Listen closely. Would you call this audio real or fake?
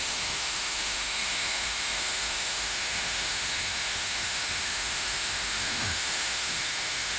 fake